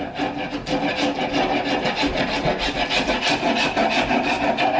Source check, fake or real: real